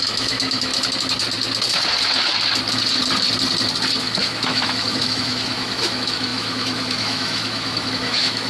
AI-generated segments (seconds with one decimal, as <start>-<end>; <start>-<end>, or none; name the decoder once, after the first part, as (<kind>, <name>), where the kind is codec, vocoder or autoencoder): 0.0-0.7 (autoencoder, DAC-VAE); 4.0-8.5